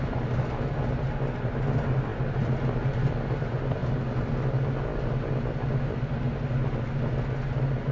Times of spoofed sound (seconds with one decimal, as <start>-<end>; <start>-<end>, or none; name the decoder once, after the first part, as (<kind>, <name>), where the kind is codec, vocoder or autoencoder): none